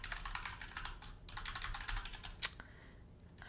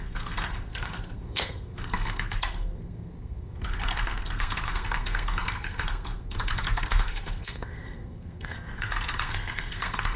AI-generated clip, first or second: second